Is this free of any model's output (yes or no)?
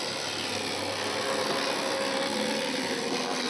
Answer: yes